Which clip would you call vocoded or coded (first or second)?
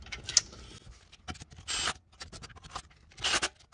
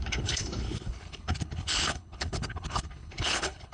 second